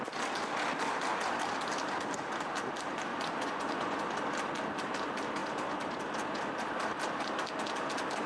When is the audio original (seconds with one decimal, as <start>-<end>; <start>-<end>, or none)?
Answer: 0.0-3.1; 4.0-8.3